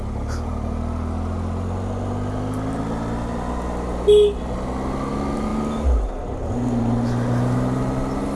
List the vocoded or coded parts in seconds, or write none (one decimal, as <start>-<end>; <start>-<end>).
none